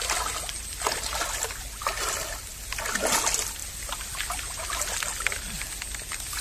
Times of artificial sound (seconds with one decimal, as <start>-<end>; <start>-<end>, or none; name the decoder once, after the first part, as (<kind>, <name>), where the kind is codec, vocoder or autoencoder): none